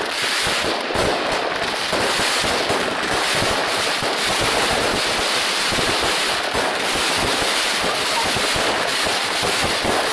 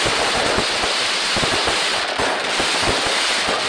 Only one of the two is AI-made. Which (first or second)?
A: first